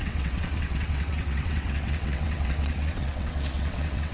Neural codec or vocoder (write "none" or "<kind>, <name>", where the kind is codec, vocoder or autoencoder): vocoder, WaveNeXt